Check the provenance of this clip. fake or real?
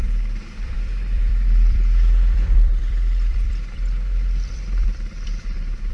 fake